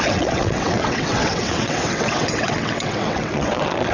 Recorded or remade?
remade